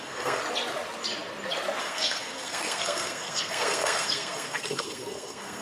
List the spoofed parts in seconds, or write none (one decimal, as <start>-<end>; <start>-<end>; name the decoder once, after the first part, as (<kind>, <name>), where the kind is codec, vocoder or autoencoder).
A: 0.0-0.4 (codec, SNAC); 1.8-5.6